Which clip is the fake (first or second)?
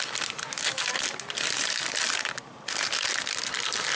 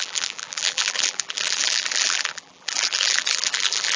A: second